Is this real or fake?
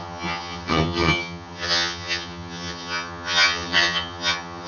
fake